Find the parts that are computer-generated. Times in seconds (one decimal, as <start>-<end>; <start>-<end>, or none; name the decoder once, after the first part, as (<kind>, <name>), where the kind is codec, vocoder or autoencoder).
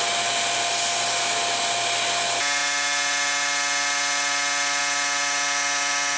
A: none